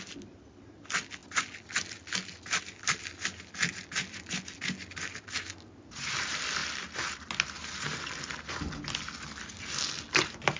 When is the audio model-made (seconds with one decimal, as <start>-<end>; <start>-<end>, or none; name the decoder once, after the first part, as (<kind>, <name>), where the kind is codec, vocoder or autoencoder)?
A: none